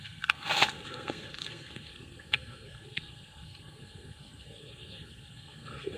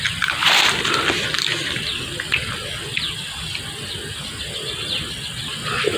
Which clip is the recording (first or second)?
second